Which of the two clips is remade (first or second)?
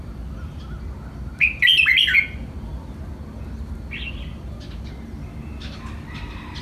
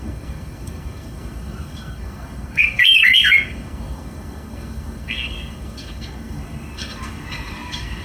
second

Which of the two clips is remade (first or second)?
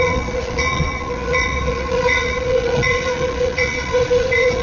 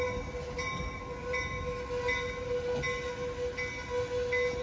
first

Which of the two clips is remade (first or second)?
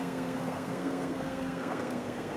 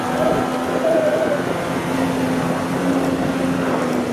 first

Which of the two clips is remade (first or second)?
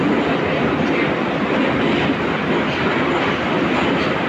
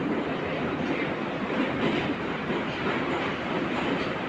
second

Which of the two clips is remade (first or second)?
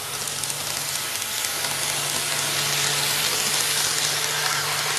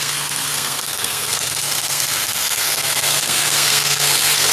second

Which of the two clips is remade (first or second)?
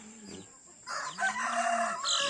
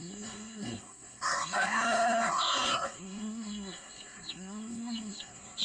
second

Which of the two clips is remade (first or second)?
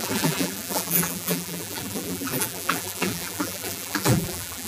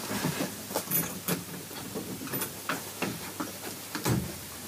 first